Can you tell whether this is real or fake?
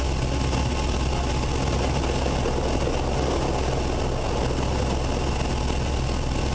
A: real